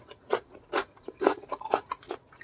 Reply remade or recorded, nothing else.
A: remade